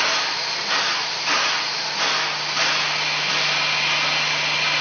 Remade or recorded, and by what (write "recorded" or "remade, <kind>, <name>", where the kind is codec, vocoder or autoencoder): recorded